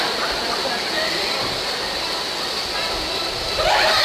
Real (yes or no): yes